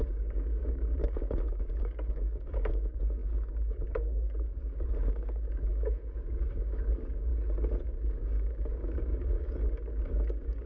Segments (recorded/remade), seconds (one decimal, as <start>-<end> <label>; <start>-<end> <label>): 0.0-7.3 remade; 7.3-7.9 recorded; 7.9-10.7 remade